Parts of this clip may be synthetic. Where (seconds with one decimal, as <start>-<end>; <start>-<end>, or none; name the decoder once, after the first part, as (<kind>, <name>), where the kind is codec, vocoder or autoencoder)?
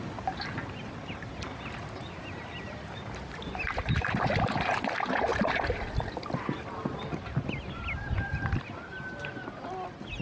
none